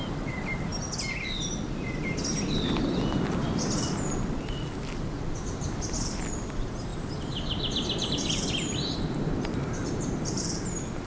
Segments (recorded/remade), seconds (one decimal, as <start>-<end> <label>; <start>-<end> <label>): 0.0-0.7 remade; 0.7-4.9 recorded; 4.9-11.1 remade